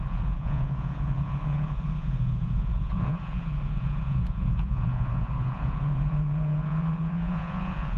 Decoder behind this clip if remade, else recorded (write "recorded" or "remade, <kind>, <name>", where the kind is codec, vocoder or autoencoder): remade, vocoder, Vocos